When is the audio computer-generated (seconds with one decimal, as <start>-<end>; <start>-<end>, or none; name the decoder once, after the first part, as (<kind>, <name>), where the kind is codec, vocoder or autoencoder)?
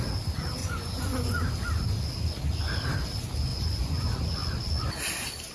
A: 0.6-1.5 (vocoder, Vocos); 3.5-4.2